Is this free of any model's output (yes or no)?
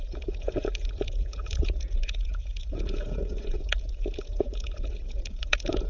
no